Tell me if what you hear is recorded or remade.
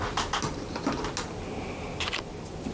recorded